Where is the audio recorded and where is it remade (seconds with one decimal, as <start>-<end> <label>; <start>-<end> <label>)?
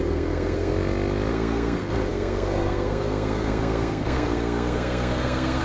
0.0-0.7 remade; 0.7-1.3 recorded; 1.3-5.6 remade